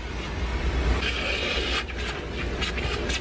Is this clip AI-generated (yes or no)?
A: no